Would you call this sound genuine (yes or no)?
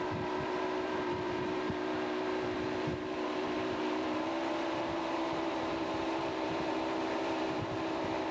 no